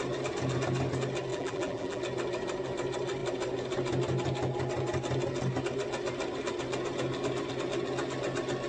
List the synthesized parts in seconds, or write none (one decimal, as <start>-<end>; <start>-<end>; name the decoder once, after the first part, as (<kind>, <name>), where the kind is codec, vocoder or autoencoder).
1.3-2.0 (vocoder, BigVGAN v2)